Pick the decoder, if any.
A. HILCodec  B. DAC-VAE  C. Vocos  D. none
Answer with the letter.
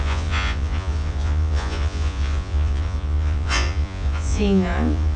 C